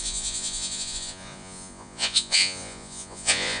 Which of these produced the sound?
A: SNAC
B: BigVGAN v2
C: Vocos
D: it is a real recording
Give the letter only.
C